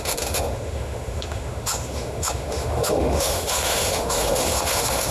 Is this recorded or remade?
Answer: remade